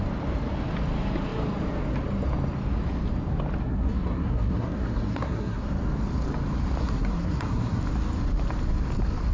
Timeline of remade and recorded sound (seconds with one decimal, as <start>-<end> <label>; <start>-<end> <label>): 0.0-3.6 recorded; 3.6-5.7 remade; 5.7-6.8 recorded; 6.8-7.8 remade; 7.8-9.3 recorded